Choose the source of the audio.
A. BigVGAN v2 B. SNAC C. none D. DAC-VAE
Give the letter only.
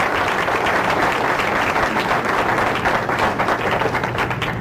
C